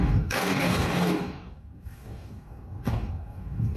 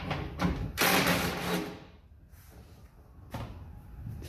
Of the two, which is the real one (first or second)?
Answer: second